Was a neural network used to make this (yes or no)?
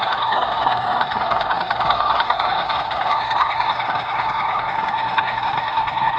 yes